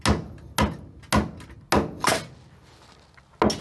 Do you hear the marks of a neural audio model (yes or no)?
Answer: no